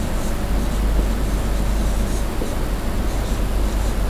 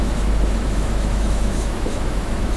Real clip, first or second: first